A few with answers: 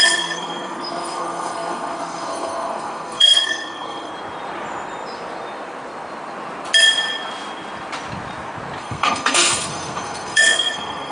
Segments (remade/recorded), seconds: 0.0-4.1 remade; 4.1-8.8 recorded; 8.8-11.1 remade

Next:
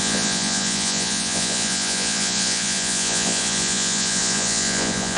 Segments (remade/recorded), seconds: 0.0-5.2 remade